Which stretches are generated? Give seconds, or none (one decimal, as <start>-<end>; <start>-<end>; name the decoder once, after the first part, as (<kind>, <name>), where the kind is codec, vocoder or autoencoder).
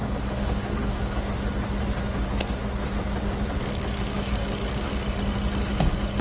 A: 0.0-1.2 (codec, DAC); 3.6-4.9